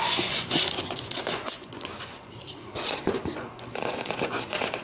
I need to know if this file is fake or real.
fake